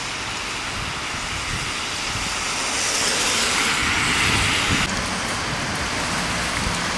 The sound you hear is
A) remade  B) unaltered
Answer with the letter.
B